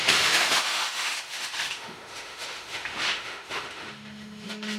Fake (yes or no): yes